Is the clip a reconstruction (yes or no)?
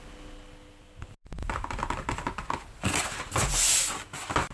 no